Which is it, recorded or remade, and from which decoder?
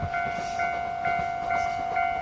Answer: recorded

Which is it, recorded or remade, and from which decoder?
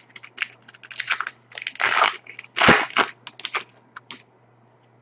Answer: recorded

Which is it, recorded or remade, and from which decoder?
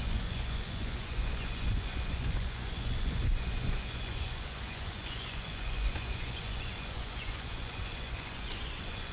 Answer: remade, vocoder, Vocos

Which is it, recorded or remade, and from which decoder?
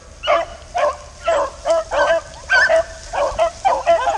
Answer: recorded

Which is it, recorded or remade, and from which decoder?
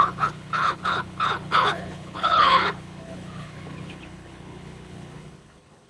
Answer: remade, codec, HILCodec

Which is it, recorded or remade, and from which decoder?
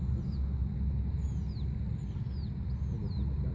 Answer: recorded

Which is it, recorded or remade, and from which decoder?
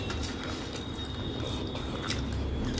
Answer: recorded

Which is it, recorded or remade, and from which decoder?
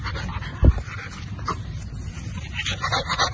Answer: remade, vocoder, BigVGAN v2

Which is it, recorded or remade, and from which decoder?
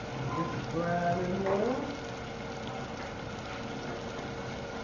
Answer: recorded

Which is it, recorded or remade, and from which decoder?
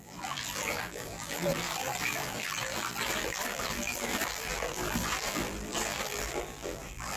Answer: remade, vocoder, BigVGAN v2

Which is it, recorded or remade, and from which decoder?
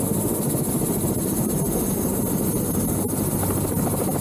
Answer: recorded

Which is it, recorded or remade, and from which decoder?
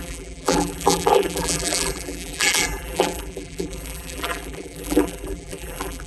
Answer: remade, vocoder, BigVGAN v2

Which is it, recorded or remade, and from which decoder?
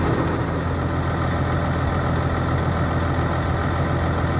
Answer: recorded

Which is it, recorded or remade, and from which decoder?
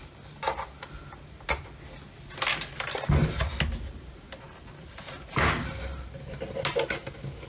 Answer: recorded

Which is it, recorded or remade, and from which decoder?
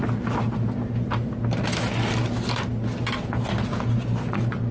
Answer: recorded